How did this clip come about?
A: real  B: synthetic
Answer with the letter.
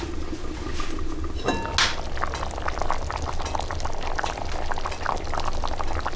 A